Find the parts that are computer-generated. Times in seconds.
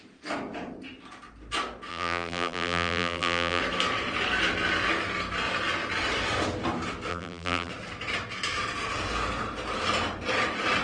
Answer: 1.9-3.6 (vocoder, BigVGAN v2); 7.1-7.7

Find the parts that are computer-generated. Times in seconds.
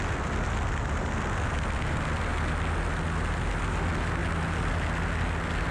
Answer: none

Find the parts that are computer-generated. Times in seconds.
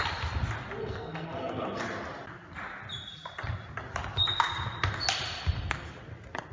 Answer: 0.8-1.8 (codec, SNAC)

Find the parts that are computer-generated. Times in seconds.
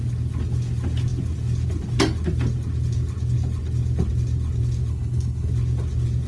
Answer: 4.9-5.5 (codec, HILCodec)